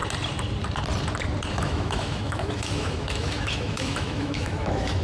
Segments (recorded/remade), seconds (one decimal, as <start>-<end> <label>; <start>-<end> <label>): 0.0-1.5 recorded; 1.5-5.0 remade